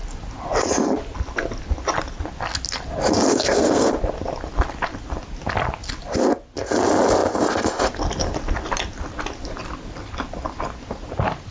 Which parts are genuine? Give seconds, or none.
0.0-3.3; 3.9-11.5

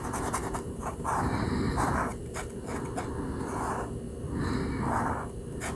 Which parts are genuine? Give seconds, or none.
2.1-5.8

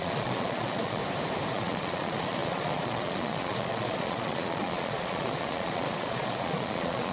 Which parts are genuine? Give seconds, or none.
1.0-1.5

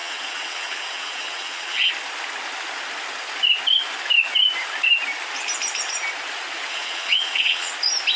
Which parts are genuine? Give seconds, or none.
1.9-6.7; 7.7-8.2

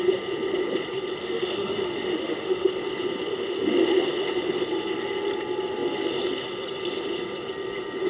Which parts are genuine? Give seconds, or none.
0.0-1.2; 2.7-3.3; 4.0-8.1